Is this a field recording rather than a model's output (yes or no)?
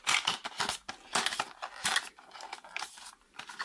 yes